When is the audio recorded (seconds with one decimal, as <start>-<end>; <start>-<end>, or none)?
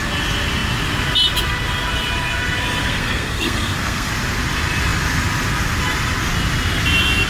0.0-2.8; 4.1-7.3